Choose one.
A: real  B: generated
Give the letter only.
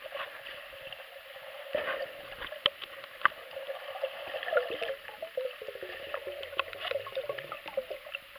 A